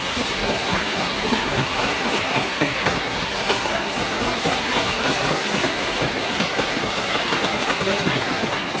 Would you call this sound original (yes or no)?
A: no